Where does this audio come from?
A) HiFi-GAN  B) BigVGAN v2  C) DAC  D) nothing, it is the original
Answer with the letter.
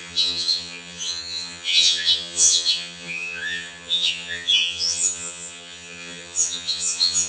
A